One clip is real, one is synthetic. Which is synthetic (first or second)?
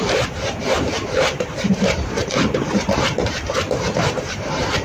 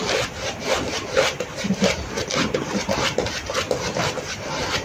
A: first